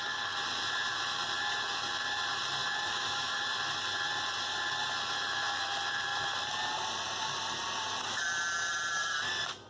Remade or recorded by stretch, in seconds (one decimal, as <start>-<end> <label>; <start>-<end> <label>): 0.0-2.6 recorded; 2.6-3.4 remade; 3.4-9.7 recorded